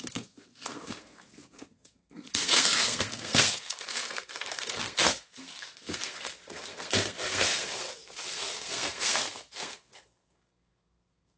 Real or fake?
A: fake